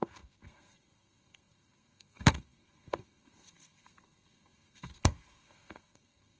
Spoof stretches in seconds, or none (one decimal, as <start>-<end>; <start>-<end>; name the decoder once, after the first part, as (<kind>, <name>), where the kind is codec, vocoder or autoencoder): 0.0-6.4 (codec, SNAC)